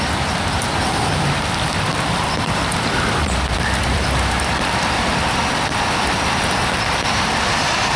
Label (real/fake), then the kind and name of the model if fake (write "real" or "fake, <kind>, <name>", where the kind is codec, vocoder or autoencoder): fake, vocoder, BigVGAN v2